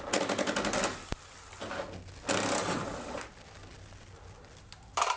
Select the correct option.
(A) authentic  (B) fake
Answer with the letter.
A